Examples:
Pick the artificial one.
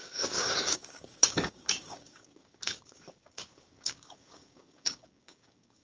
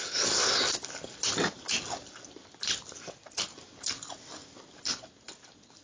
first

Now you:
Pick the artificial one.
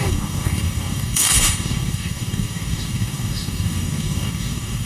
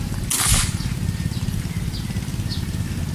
first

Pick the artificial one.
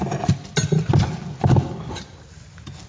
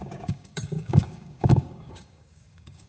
second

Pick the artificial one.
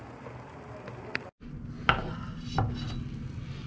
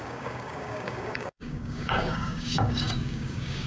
second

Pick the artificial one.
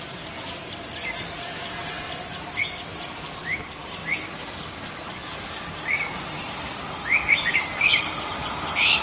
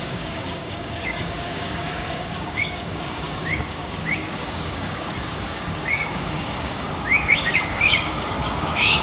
second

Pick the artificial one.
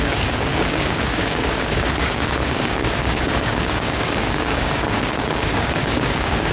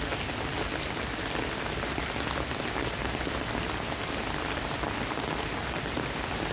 first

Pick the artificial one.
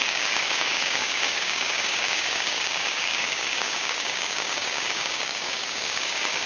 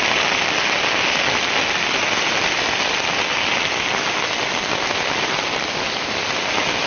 first